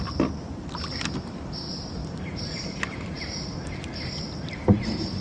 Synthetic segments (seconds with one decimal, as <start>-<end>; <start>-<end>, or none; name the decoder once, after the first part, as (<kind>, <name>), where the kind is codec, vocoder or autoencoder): 2.0-3.2 (vocoder, BigVGAN v2)